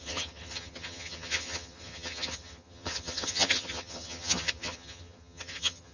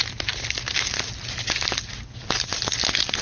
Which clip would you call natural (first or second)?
second